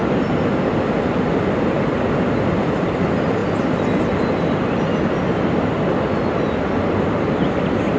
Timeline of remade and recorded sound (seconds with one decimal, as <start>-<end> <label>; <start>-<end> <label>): 0.0-8.0 recorded